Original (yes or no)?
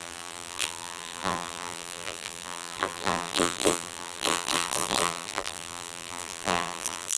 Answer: no